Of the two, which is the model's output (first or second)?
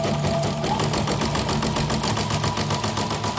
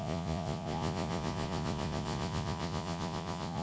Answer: second